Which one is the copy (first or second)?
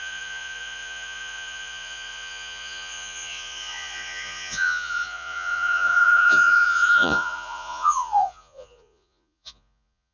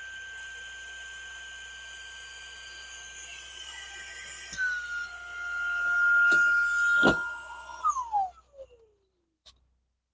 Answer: first